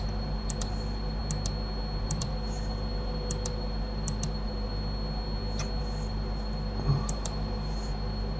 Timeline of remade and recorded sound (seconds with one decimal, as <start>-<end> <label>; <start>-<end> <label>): 0.0-1.2 remade; 1.2-2.0 recorded; 2.0-4.7 remade; 4.7-5.8 recorded; 5.8-8.4 remade